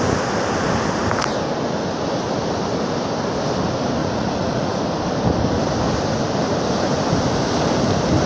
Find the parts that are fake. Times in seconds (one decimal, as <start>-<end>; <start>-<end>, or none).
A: 4.0-4.8